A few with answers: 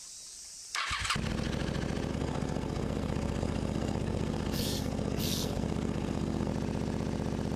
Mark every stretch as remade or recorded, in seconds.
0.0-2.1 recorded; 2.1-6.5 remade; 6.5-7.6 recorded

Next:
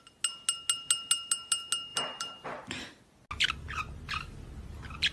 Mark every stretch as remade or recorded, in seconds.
0.0-1.9 recorded; 1.9-3.0 remade; 3.0-5.1 recorded

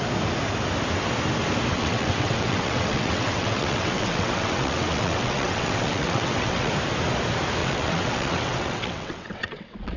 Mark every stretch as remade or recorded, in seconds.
0.0-1.7 recorded; 1.7-6.7 remade; 6.7-7.6 recorded; 7.6-10.0 remade

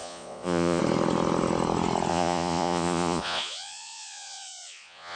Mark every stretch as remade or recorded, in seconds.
0.0-0.8 remade; 0.8-2.1 recorded; 2.1-5.2 remade

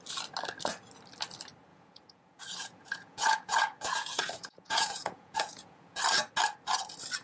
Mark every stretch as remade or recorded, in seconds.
0.0-1.7 recorded; 1.7-6.0 remade; 6.0-7.2 recorded